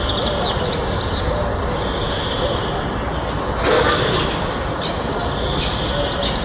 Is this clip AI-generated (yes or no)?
no